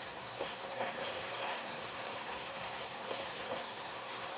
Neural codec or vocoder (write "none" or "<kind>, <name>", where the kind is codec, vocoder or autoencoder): codec, SNAC